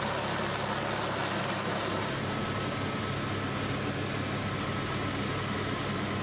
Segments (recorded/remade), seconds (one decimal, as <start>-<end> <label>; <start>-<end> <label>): 0.0-6.2 recorded